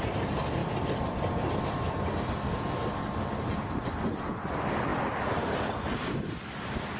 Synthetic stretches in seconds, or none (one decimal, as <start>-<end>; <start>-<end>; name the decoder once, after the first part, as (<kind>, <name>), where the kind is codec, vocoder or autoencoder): none